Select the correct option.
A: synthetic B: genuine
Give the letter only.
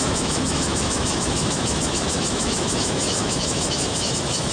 A